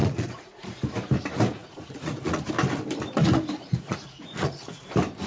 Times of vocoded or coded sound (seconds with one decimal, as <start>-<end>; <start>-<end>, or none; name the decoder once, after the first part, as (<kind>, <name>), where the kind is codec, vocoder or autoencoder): 0.0-0.8 (vocoder, Vocos); 1.6-2.5; 3.2-4.8